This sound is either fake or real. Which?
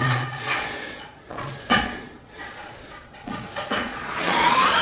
fake